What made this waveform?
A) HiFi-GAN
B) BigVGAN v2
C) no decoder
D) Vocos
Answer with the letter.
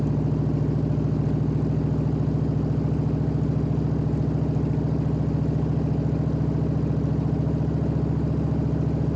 C